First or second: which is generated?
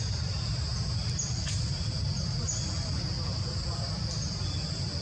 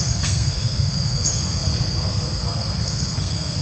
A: second